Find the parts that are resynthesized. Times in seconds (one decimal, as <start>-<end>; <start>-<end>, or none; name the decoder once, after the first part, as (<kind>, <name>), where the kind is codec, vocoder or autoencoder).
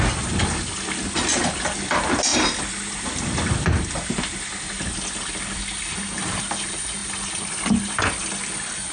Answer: none